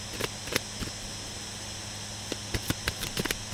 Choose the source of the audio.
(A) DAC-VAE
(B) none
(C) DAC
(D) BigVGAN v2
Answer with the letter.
B